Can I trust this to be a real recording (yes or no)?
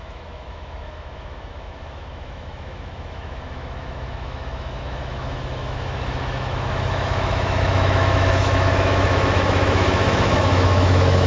no